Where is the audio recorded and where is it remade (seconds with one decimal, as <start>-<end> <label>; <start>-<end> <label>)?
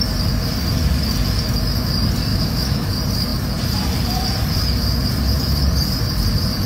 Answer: 0.0-2.3 recorded; 2.3-2.9 remade; 2.9-6.7 recorded